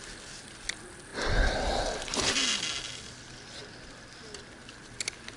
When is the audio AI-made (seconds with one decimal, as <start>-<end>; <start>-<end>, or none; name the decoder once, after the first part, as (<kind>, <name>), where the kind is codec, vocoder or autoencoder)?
none